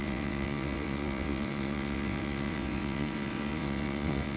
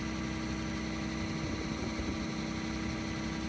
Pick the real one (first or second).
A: second